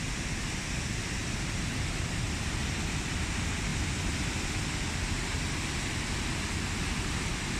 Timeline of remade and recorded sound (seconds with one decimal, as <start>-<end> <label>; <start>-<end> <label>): 0.0-1.2 recorded; 1.2-2.5 remade; 2.5-7.6 recorded